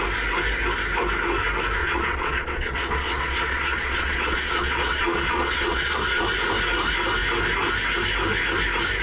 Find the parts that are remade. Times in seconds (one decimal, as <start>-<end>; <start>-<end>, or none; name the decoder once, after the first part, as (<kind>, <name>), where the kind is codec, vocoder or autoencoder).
1.8-6.2 (vocoder, Vocos)